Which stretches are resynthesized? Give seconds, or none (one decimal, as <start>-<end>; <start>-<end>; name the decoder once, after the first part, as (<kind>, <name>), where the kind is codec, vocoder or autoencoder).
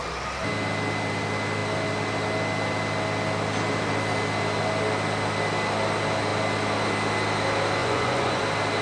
7.8-8.4 (vocoder, Vocos)